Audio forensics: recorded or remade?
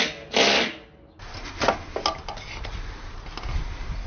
recorded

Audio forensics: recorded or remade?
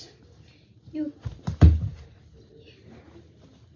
recorded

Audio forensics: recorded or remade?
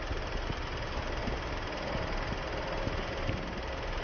recorded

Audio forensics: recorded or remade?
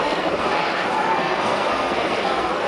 remade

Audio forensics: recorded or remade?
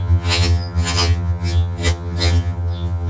remade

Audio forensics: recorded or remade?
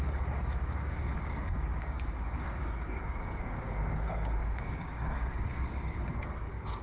remade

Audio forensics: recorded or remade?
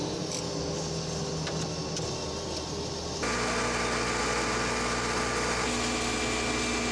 recorded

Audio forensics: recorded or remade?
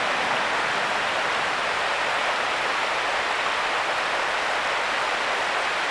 recorded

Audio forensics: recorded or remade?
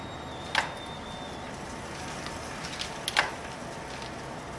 recorded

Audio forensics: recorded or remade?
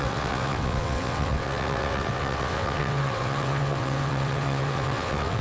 remade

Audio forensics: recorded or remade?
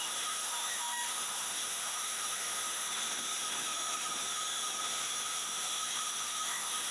remade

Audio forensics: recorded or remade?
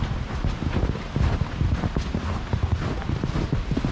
recorded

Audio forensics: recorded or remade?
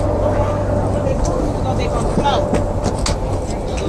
recorded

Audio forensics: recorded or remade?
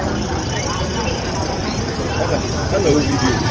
remade